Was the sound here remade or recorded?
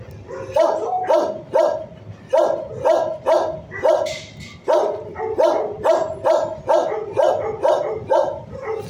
recorded